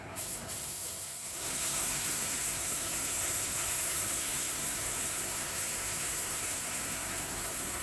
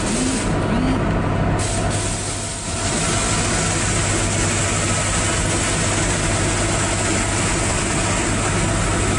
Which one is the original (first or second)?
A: second